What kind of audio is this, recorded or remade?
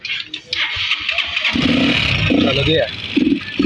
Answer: recorded